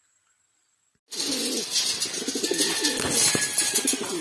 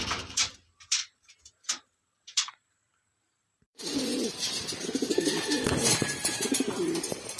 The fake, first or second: second